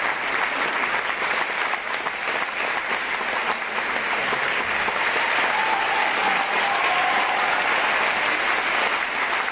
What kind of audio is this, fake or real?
real